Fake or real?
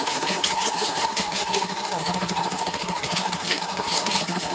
fake